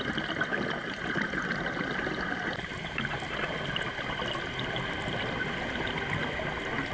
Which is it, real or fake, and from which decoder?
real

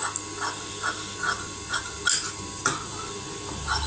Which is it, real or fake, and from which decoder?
real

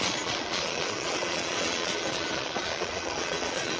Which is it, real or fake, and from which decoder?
fake, vocoder, Vocos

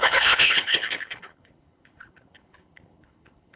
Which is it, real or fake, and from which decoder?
fake, codec, HILCodec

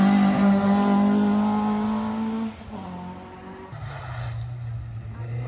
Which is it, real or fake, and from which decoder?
real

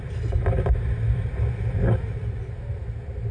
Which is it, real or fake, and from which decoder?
real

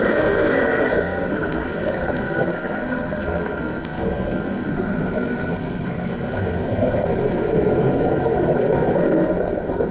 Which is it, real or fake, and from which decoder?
fake, codec, SNAC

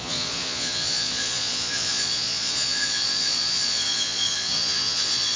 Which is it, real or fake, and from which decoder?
fake, vocoder, Vocos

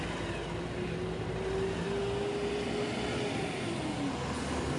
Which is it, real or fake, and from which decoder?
real